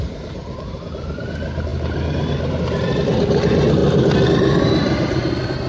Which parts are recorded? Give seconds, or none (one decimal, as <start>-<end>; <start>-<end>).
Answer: 0.0-5.7